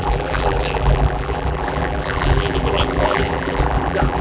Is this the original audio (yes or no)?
no